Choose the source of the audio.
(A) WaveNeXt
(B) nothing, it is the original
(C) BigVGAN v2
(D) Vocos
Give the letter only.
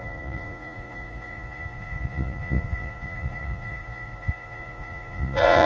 D